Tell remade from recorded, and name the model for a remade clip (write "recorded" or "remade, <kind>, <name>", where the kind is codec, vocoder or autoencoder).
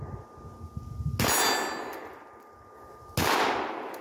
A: recorded